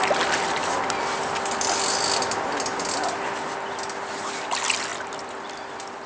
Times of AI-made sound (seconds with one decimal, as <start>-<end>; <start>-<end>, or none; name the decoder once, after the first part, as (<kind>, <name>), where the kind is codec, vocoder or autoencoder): none